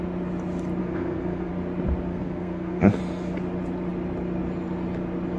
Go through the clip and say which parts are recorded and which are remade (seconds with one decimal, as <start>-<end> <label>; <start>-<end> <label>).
0.0-0.8 recorded; 0.8-1.5 remade; 1.5-2.1 recorded; 2.1-3.0 remade; 3.0-5.4 recorded